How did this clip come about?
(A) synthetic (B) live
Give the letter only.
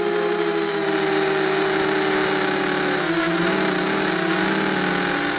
B